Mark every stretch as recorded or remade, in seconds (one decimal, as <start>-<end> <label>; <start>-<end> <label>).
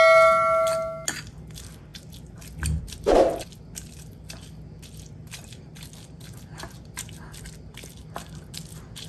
0.0-9.1 recorded